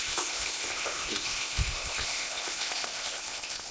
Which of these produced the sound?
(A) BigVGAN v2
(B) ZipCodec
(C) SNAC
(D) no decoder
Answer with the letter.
B